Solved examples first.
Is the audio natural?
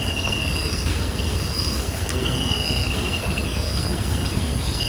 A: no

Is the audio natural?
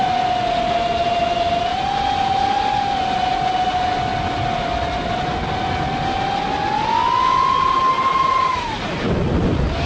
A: yes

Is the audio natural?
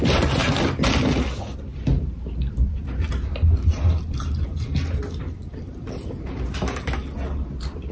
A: yes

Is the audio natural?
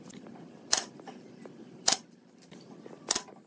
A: no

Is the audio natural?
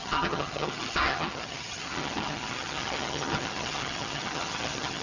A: no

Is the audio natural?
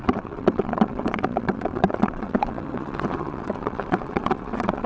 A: no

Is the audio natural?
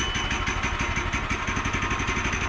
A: yes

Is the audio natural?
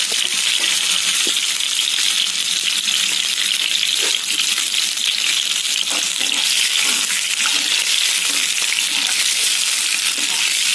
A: yes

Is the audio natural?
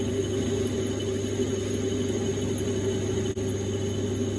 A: yes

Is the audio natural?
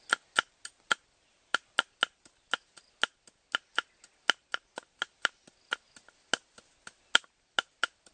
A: yes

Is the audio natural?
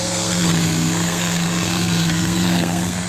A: no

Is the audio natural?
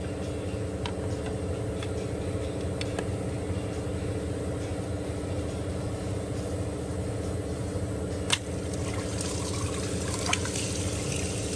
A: yes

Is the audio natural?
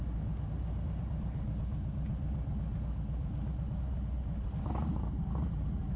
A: yes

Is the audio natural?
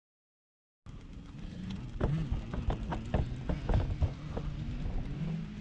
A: yes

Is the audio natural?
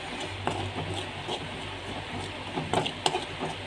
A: yes